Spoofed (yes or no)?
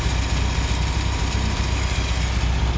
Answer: no